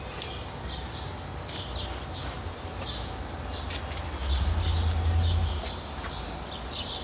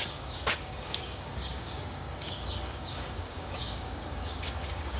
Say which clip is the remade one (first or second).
second